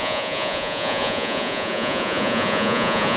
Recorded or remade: remade